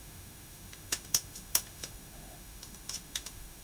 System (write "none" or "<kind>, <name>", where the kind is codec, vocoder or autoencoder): autoencoder, DAC-VAE